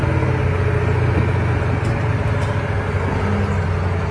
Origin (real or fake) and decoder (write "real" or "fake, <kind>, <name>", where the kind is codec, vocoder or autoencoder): real